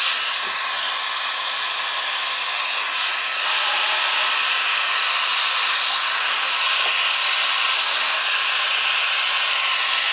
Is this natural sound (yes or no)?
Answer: yes